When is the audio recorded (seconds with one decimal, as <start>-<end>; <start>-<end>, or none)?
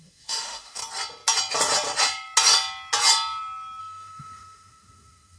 0.8-3.8